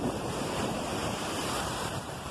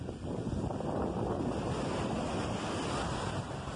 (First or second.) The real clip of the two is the second